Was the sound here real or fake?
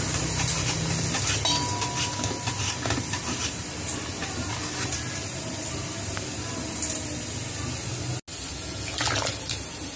real